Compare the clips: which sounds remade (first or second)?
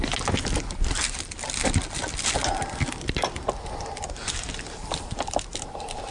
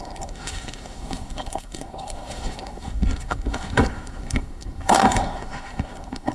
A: second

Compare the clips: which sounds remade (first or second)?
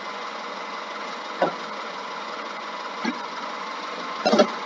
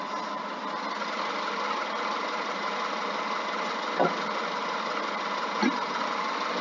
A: first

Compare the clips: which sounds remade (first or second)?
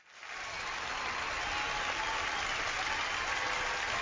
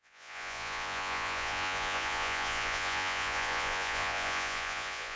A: second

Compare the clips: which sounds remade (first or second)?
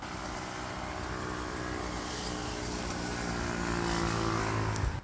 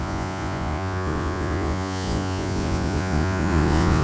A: second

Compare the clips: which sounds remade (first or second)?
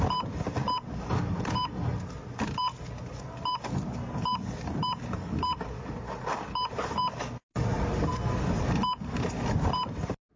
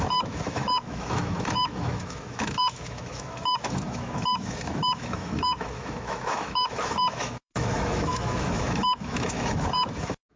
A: second